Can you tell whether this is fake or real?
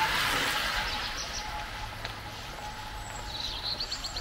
real